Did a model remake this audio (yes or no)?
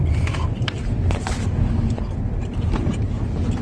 no